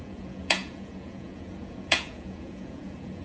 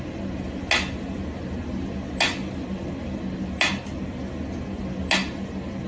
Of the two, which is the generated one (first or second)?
first